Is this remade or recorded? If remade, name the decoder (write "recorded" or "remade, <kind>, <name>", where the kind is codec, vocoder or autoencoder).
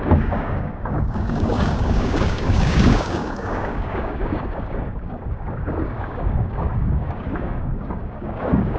remade, codec, DAC